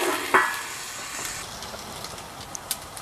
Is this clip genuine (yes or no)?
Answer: yes